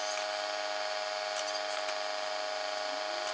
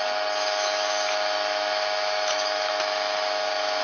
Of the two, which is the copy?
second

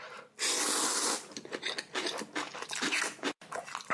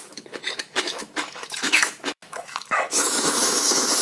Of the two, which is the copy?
second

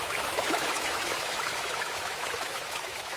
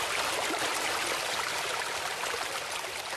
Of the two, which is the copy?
first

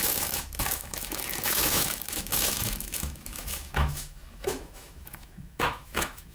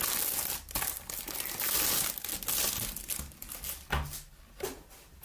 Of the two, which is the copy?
first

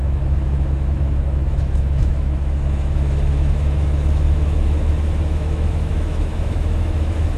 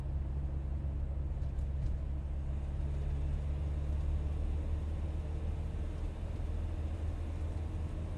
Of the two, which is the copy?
first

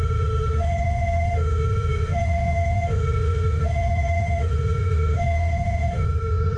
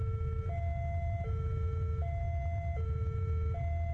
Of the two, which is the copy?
first